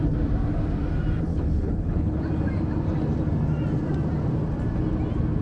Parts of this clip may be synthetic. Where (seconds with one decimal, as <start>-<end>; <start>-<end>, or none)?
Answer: 1.3-2.2